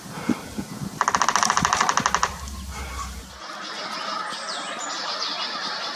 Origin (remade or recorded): recorded